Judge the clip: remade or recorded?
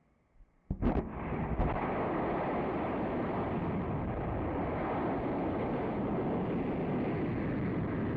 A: recorded